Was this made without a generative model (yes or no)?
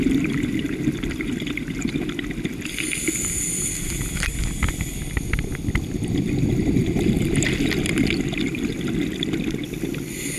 yes